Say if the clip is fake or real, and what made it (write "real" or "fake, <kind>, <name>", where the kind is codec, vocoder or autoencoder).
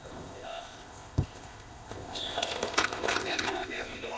fake, codec, ZipCodec